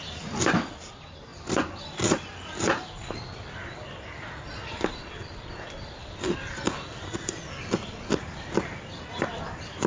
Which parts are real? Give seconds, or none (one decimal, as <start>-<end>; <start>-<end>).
0.0-9.9